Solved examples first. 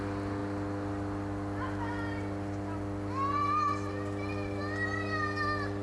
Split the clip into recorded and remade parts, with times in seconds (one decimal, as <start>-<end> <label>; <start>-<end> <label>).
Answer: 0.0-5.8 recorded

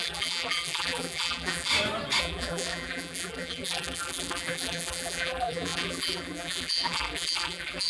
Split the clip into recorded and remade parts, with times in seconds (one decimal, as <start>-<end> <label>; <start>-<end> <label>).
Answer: 0.0-1.7 remade; 1.7-2.2 recorded; 2.2-7.9 remade

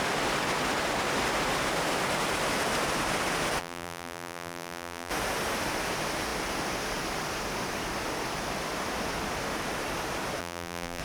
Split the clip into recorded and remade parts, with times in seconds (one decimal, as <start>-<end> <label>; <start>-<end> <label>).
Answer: 0.0-3.6 recorded; 3.6-5.1 remade; 5.1-10.4 recorded; 10.4-11.0 remade